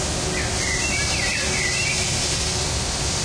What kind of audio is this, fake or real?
real